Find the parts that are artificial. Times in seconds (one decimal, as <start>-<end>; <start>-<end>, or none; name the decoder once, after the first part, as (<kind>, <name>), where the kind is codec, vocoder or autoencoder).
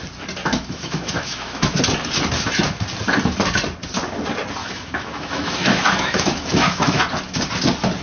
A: 0.4-1.8 (autoencoder, DAC-VAE); 4.6-7.0